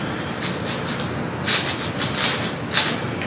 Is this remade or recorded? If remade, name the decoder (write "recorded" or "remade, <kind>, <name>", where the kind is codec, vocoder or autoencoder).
recorded